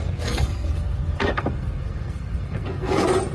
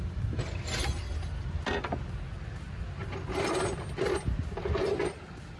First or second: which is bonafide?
second